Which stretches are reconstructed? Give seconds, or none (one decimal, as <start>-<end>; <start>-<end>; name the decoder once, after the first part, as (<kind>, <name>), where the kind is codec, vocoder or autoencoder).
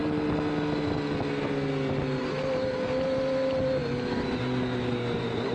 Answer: none